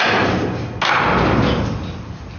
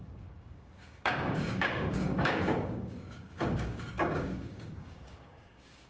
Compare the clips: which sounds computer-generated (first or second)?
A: second